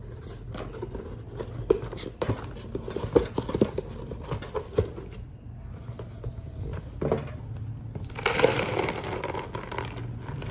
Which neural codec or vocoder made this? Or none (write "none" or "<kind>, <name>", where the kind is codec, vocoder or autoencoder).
none